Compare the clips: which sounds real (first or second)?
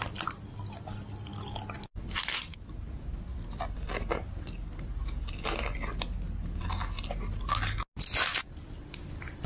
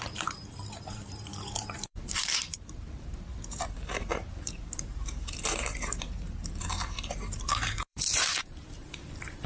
first